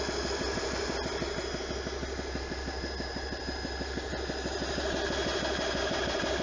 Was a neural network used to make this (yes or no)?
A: no